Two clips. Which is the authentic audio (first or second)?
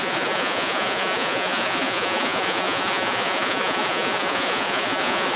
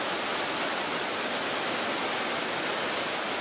second